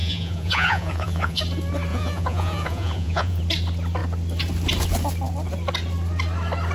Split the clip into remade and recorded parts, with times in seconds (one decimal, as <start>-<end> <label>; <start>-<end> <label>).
0.0-1.4 remade; 1.4-1.9 recorded; 1.9-3.4 remade; 3.4-6.7 recorded